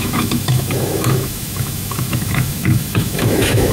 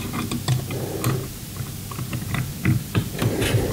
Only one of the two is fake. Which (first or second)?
first